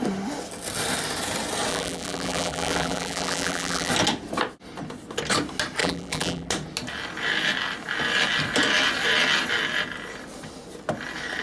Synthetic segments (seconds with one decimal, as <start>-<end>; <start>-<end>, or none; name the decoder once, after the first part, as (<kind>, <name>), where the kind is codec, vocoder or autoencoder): 1.7-3.9 (vocoder, BigVGAN v2); 5.8-6.5